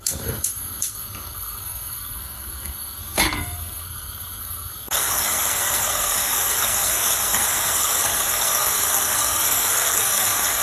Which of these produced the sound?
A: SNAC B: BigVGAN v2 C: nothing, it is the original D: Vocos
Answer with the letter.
A